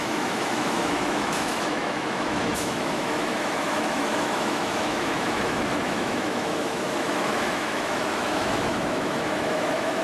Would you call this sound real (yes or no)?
no